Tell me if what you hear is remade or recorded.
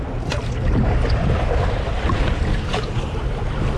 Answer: recorded